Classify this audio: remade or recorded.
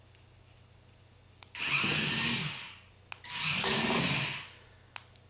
recorded